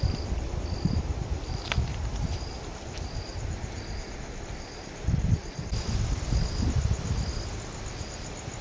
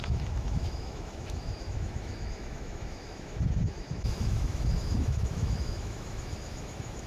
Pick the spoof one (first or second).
second